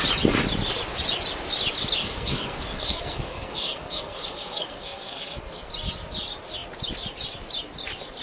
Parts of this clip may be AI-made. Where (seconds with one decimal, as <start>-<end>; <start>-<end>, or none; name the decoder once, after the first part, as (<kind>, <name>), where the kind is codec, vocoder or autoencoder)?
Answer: 2.0-5.7 (codec, SNAC)